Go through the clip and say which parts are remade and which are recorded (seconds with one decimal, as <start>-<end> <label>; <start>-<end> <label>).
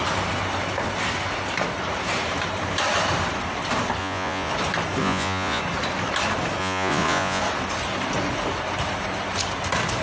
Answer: 0.0-4.0 recorded; 4.0-4.5 remade; 4.5-5.0 recorded; 5.0-5.6 remade; 5.6-6.6 recorded; 6.6-7.4 remade; 7.4-10.0 recorded